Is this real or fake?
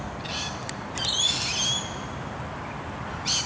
real